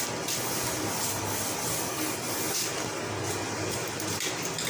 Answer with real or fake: real